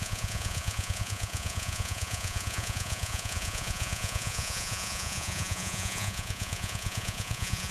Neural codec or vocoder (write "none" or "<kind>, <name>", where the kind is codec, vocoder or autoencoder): vocoder, Vocos